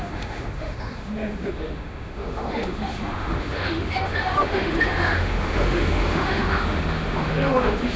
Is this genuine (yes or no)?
no